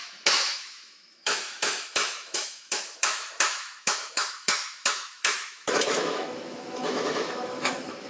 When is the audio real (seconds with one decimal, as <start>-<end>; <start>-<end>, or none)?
none